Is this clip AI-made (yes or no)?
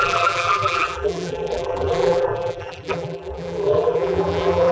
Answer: yes